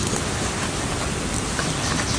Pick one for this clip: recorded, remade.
recorded